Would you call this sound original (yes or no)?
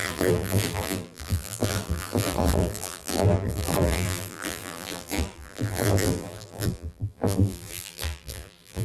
no